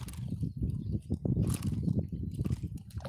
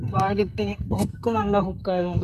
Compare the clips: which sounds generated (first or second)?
second